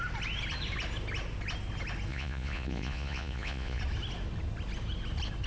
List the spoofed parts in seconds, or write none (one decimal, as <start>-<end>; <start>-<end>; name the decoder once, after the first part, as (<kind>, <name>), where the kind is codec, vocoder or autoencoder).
2.1-3.8 (vocoder, Vocos)